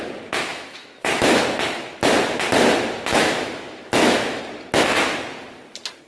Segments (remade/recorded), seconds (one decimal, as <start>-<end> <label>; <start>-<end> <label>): 0.0-0.5 recorded; 0.5-1.4 remade; 1.4-3.1 recorded; 3.1-4.4 remade; 4.4-6.1 recorded